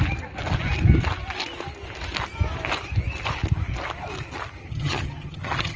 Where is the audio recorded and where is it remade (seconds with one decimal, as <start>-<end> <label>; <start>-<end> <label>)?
0.0-4.6 recorded; 4.6-5.8 remade